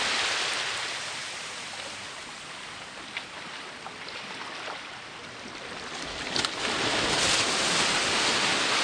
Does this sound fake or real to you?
real